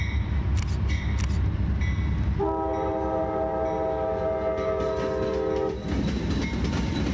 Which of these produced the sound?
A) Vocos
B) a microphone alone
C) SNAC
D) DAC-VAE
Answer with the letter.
B